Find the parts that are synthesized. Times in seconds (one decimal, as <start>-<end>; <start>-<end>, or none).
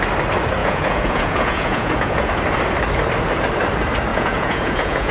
0.6-2.3; 4.1-5.1